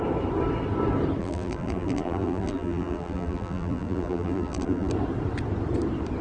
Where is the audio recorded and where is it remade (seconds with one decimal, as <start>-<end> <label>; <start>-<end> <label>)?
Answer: 0.0-1.2 recorded; 1.2-4.9 remade; 4.9-6.2 recorded

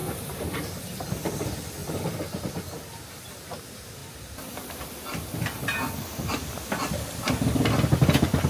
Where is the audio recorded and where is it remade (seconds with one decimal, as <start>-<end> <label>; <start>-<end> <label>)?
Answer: 0.0-0.8 remade; 0.8-1.8 recorded; 1.8-2.5 remade; 2.5-8.5 recorded

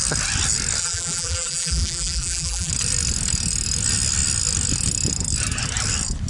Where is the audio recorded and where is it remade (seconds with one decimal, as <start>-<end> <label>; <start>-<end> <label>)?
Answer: 0.0-0.8 recorded; 0.8-2.7 remade; 2.7-6.3 recorded

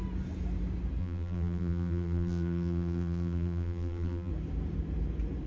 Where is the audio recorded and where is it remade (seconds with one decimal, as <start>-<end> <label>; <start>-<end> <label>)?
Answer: 0.0-1.0 recorded; 1.0-4.3 remade; 4.3-5.5 recorded

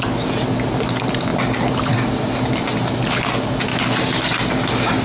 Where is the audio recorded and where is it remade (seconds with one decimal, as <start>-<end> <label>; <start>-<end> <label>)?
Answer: 0.0-5.0 recorded

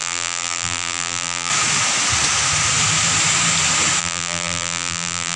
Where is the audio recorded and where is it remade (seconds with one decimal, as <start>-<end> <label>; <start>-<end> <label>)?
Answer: 0.0-1.5 remade; 1.5-4.0 recorded; 4.0-5.4 remade

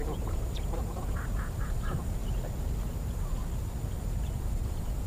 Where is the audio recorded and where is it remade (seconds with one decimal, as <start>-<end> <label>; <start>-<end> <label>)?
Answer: 0.0-2.2 remade; 2.2-2.9 recorded; 2.9-3.4 remade; 3.4-4.0 recorded; 4.0-5.1 remade

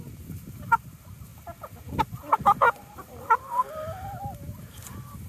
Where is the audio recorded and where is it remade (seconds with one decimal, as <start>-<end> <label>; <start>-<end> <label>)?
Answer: 0.0-1.3 recorded; 1.3-4.5 remade; 4.5-5.3 recorded